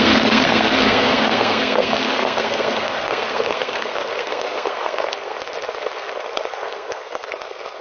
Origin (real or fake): fake